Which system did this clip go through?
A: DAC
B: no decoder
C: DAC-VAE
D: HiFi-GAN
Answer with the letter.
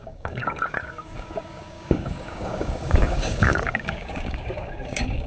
A